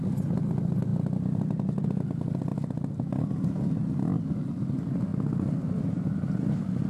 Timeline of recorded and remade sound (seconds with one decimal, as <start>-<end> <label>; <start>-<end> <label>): 0.0-6.9 recorded